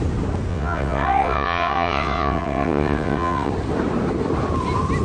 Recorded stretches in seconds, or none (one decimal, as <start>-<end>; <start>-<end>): 0.0-0.5; 3.5-5.0

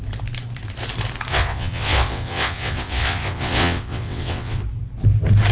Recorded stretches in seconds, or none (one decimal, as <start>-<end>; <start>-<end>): 0.0-1.3; 4.6-5.5

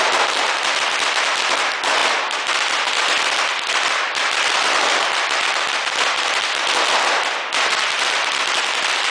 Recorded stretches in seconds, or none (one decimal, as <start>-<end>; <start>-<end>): 0.0-9.1